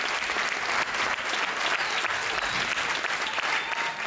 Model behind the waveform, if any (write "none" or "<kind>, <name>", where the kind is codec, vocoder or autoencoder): none